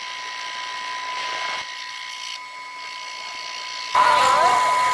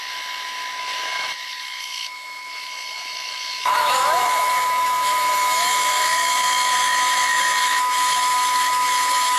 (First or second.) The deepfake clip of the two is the second